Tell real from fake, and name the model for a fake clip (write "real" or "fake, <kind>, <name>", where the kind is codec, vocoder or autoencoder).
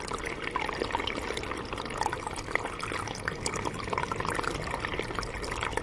real